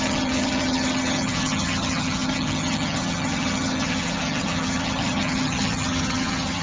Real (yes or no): no